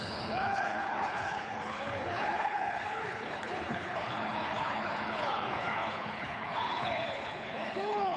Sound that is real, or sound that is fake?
fake